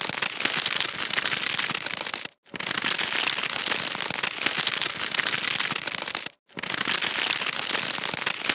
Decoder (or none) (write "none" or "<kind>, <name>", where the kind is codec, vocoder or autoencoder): none